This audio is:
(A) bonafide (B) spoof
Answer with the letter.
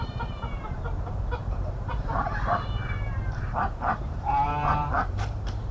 B